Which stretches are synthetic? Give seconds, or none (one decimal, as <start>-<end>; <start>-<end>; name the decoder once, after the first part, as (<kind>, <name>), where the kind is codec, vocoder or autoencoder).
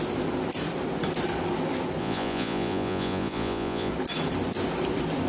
2.0-3.9 (vocoder, Vocos)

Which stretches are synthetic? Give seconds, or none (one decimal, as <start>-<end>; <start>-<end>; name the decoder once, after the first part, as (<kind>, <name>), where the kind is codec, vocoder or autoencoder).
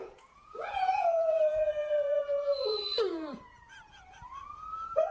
0.0-4.2 (vocoder, Vocos)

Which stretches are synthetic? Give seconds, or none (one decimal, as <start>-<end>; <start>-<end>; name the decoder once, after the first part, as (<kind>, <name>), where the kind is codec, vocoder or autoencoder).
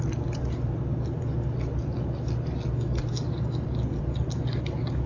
none